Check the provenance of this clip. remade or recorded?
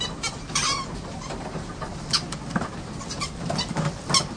recorded